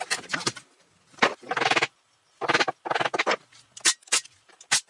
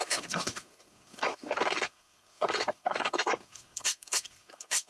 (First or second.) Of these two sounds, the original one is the first